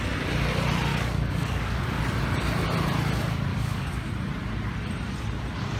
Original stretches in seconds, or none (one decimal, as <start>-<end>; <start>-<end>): 0.0-0.9; 2.0-3.5; 4.1-5.8